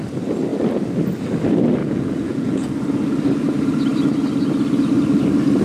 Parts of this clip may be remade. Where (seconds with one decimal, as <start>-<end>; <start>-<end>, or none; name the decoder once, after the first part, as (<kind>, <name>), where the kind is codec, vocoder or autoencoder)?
1.8-2.7 (vocoder, Vocos)